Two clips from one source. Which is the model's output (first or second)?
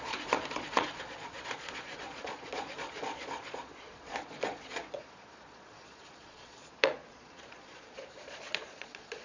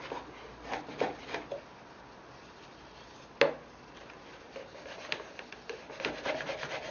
first